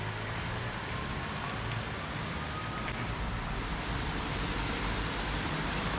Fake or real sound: fake